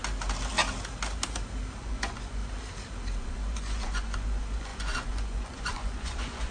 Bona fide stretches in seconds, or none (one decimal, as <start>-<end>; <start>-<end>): 0.0-1.8; 2.4-3.2